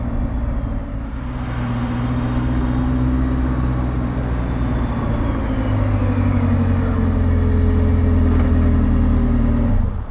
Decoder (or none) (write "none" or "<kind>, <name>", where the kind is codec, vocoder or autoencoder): none